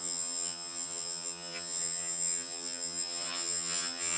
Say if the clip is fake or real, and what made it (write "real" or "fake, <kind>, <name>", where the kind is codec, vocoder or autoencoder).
fake, vocoder, HiFi-GAN